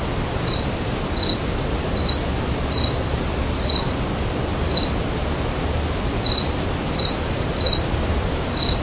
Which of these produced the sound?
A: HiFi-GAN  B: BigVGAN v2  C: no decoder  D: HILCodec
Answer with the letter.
C